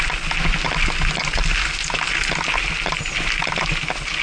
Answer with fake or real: real